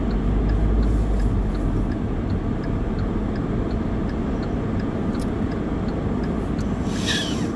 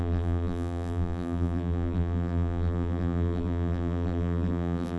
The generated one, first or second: second